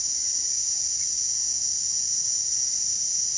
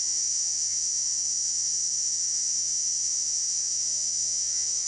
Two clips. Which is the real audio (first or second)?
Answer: first